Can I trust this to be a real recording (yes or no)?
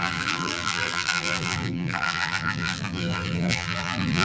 no